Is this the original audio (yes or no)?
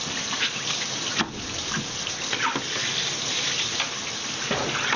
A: yes